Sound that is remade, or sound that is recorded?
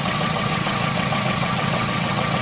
remade